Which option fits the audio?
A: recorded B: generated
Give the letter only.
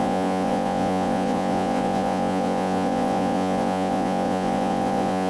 B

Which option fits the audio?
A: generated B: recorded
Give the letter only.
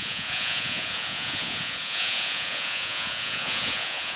A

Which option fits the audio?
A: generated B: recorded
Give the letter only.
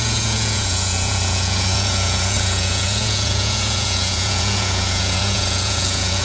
A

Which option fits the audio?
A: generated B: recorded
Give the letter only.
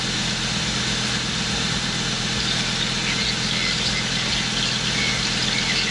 B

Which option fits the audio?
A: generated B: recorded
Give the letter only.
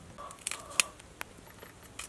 B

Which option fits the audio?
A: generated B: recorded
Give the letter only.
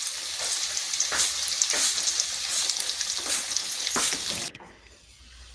B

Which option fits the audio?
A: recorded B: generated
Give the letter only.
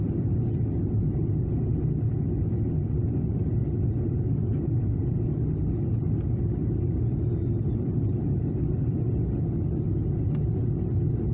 A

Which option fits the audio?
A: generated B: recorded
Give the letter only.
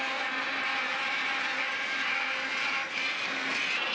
B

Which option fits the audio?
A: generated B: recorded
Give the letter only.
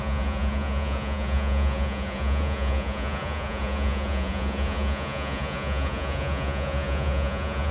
A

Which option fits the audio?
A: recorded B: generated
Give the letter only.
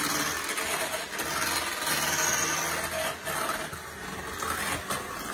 A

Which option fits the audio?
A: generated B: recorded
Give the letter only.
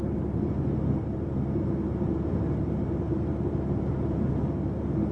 B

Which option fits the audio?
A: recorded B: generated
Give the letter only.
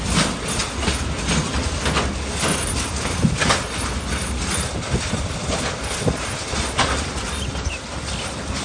A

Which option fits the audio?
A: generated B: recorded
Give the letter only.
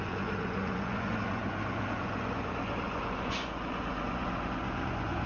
A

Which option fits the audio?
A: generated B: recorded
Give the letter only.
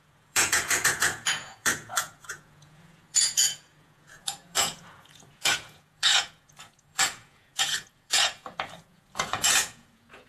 A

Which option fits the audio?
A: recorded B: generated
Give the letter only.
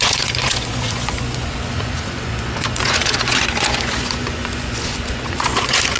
B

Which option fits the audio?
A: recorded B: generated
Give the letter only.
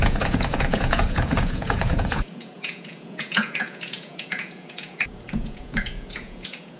B